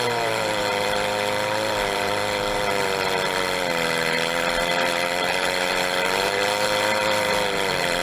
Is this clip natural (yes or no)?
no